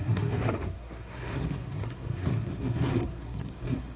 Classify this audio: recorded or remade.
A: remade